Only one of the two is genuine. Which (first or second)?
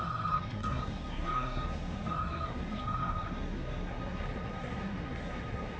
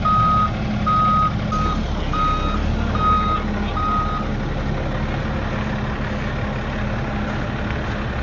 second